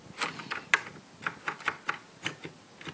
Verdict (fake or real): real